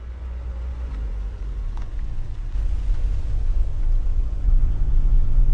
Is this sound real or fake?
fake